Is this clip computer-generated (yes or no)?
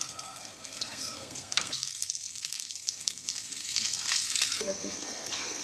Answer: yes